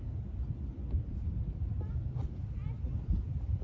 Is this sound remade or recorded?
recorded